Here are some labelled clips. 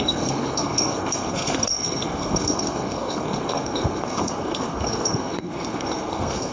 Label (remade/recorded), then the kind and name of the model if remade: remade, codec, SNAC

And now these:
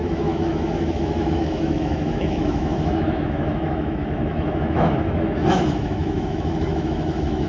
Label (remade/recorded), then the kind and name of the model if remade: remade, autoencoder, DAC-VAE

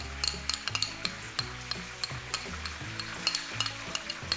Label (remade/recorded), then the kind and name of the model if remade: recorded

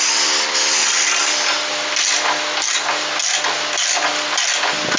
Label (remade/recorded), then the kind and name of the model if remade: recorded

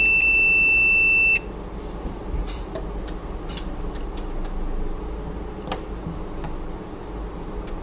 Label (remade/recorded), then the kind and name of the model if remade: recorded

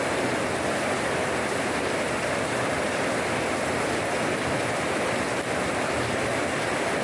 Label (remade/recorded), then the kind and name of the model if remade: recorded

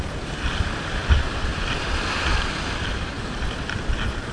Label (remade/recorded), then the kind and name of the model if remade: recorded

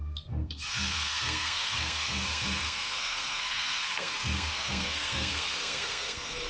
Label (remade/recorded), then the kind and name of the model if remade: remade, codec, SNAC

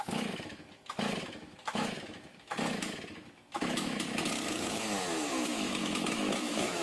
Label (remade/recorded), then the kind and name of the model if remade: remade, autoencoder, DAC-VAE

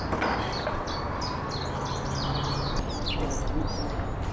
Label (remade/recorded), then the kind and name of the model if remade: recorded